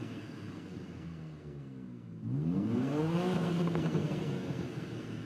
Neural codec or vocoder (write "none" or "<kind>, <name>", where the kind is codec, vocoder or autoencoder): codec, SNAC